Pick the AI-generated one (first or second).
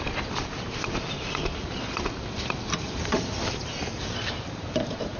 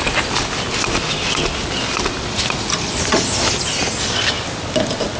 first